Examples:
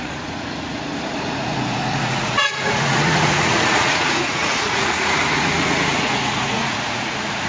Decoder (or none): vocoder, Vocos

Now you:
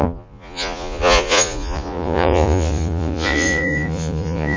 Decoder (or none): vocoder, Vocos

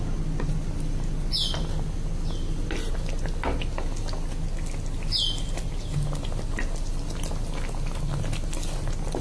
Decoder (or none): none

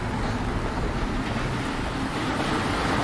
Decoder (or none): none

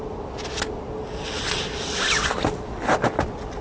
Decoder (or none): none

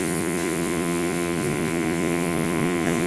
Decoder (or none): vocoder, Vocos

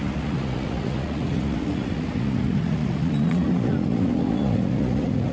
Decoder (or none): vocoder, Vocos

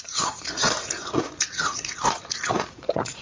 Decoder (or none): vocoder, Vocos